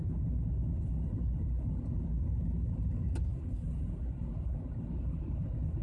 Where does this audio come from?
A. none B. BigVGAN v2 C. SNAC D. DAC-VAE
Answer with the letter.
A